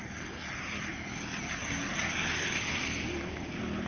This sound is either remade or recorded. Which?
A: recorded